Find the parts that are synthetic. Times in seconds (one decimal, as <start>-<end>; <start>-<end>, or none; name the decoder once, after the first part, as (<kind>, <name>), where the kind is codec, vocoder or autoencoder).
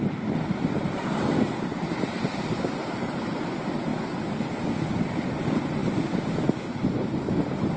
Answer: 0.0-7.8 (vocoder, BigVGAN v2)